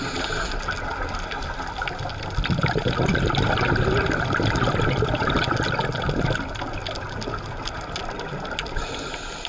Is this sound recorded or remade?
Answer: recorded